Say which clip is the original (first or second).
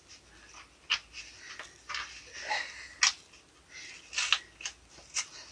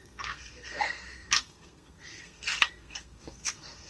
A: first